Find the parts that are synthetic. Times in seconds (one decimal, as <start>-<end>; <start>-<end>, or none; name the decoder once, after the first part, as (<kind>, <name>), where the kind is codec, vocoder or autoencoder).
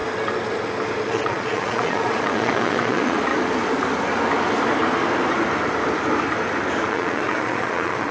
1.0-3.3 (vocoder, Vocos); 6.9-8.1